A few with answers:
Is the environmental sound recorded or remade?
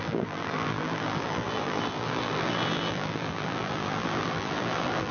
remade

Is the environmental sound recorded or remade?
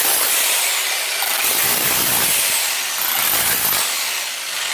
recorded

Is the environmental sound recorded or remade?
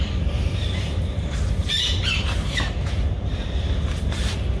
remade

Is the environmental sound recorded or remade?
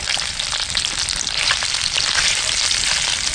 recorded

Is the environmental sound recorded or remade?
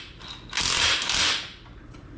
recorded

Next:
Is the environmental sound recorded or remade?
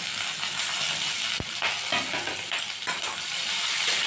recorded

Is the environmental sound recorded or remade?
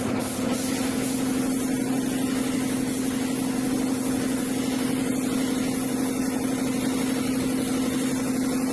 recorded